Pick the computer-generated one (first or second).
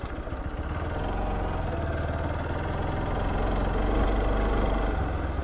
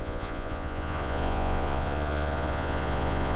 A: second